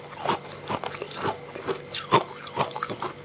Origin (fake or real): real